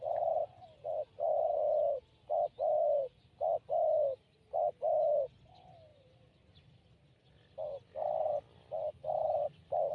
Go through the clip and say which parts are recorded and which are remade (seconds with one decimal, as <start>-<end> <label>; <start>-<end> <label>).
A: 0.0-9.9 recorded